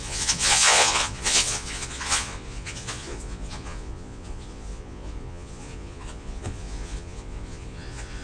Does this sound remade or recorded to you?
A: remade